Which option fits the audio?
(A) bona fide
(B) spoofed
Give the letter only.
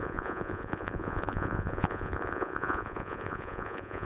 B